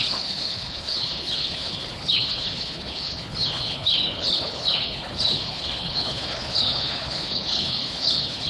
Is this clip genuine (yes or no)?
no